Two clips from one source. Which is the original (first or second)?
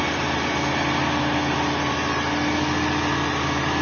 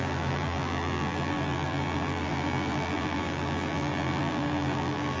first